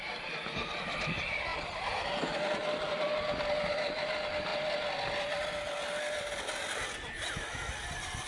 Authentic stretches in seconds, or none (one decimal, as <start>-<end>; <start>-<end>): 0.0-8.3